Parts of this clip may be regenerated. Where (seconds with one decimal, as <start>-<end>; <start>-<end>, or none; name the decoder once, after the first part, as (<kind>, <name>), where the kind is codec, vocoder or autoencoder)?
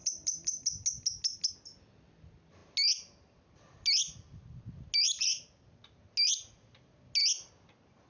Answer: none